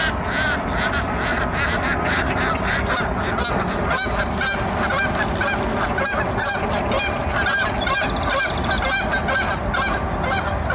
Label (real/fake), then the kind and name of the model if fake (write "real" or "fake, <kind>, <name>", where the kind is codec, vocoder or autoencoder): real